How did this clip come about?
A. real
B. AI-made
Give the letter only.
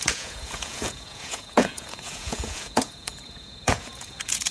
B